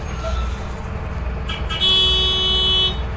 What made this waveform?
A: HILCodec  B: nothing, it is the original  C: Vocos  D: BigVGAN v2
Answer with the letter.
B